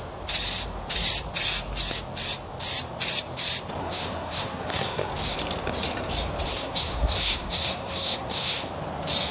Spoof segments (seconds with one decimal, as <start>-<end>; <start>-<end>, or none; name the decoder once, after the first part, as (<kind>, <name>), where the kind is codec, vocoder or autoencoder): 3.8-5.1 (codec, SNAC); 6.5-8.7